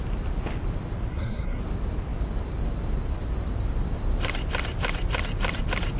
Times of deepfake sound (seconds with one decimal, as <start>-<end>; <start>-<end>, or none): 1.1-1.6

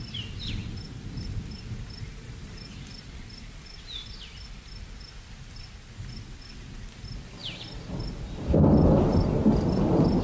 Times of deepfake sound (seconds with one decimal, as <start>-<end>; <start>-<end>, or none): none

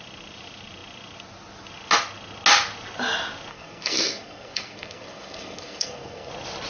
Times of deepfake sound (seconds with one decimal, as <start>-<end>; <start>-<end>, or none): 3.5-6.3

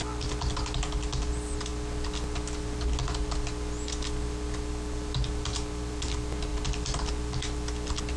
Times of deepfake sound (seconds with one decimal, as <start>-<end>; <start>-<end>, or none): none